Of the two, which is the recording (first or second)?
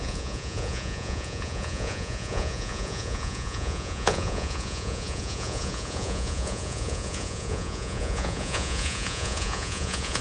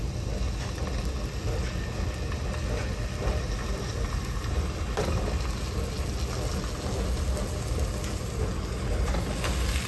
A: second